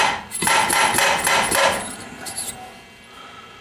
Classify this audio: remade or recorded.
recorded